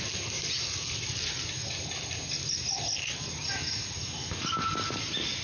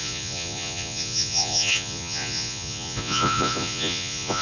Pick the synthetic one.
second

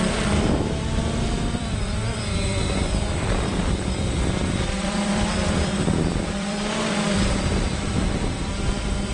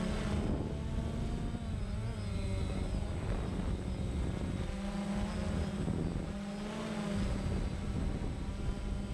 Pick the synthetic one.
first